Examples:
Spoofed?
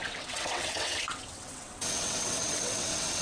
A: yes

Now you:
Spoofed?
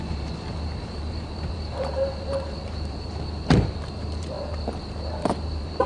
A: yes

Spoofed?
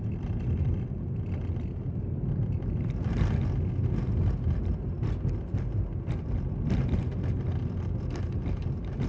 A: no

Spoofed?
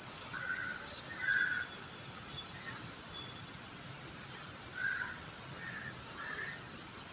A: no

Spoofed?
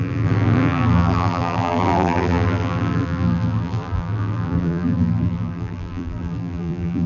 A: yes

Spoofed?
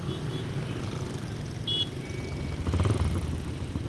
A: no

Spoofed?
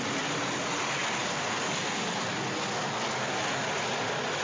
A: no